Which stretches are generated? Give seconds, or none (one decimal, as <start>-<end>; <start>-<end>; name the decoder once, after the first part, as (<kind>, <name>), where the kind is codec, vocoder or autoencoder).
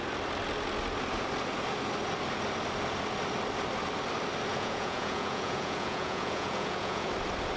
4.5-7.1 (vocoder, Vocos)